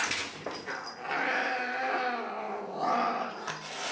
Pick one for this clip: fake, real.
real